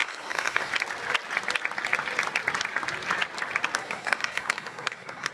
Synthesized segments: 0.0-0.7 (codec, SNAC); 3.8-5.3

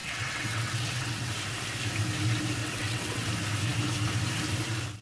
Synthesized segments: 0.0-1.3 (vocoder, WaveNeXt); 2.6-3.3

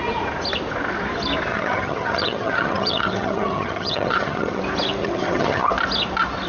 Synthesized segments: 1.5-4.6 (vocoder, HiFi-GAN); 5.0-5.7

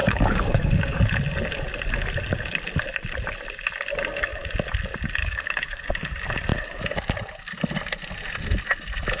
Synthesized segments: 0.0-1.0 (codec, DAC); 5.2-5.9

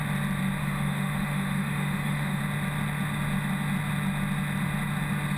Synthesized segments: 0.6-2.4 (autoencoder, DAC-VAE)

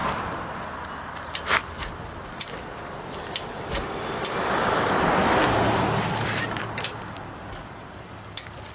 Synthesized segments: 0.0-5.2 (vocoder, BigVGAN v2); 6.1-8.7

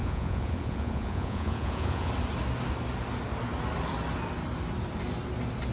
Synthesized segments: 0.0-2.1 (vocoder, Vocos)